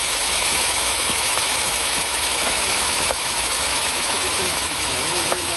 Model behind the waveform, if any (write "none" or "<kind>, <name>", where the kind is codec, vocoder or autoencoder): autoencoder, DAC-VAE